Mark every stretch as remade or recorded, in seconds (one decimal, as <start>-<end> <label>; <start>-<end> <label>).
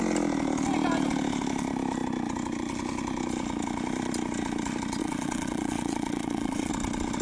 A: 0.0-5.0 recorded; 5.0-6.7 remade; 6.7-7.2 recorded